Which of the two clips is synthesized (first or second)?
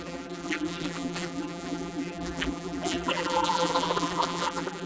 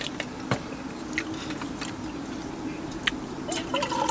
first